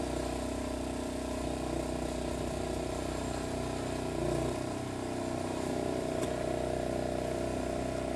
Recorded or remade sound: recorded